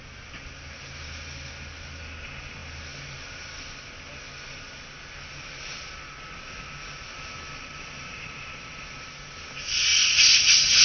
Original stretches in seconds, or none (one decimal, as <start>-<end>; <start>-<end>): 0.0-7.7; 8.8-9.9